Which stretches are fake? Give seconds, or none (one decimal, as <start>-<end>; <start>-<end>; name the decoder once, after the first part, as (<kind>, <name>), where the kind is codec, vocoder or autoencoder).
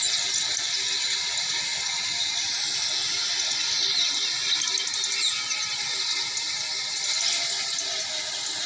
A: none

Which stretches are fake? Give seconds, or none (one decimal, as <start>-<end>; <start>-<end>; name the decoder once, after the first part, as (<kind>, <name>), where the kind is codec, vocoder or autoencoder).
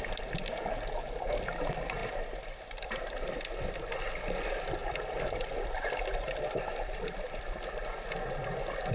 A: 4.8-7.8 (vocoder, BigVGAN v2)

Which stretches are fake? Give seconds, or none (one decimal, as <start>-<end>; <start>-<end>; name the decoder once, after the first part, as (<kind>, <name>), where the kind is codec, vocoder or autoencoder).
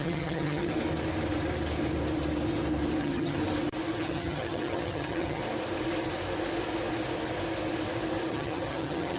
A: 0.0-0.7 (vocoder, HiFi-GAN); 3.0-3.4; 4.0-5.4; 8.3-9.2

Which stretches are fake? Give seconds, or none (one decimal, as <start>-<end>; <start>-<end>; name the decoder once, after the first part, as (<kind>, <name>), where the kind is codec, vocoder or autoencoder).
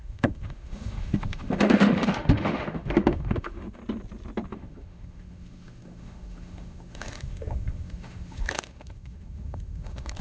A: 0.0-3.8 (autoencoder, DAC-VAE); 4.5-10.2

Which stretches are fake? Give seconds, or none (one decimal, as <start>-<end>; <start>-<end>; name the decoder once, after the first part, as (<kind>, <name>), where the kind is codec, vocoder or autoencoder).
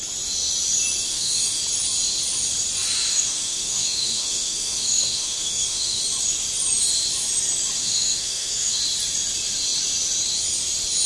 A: 1.1-1.6 (autoencoder, DAC-VAE); 3.1-6.0; 7.8-8.8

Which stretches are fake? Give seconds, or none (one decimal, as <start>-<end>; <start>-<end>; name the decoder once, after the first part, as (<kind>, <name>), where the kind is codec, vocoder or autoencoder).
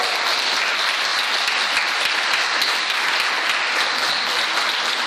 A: none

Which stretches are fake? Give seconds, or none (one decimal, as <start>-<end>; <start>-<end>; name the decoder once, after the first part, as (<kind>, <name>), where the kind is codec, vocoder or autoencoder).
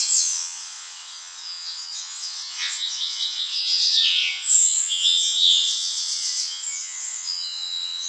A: 0.0-8.1 (vocoder, WaveNeXt)